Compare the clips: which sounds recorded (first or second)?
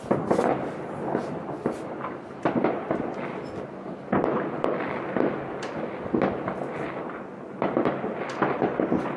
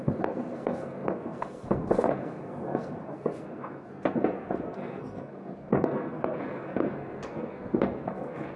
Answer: first